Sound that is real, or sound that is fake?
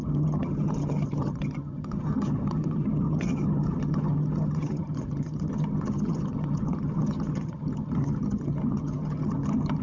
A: fake